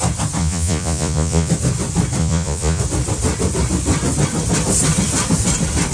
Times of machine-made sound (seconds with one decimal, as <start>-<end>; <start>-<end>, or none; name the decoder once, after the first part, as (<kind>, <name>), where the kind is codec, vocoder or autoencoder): 0.4-1.5 (vocoder, Vocos); 2.2-2.8